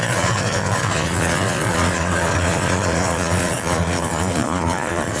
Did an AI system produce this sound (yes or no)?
yes